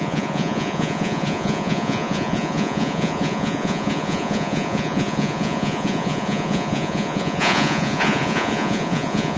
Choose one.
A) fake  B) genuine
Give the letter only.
A